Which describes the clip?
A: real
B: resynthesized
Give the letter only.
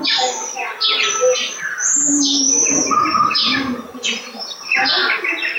A